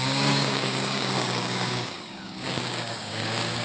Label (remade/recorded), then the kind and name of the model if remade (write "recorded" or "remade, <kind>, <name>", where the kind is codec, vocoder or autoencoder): remade, codec, DAC